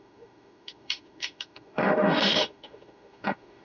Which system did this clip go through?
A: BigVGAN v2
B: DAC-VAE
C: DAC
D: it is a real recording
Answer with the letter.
B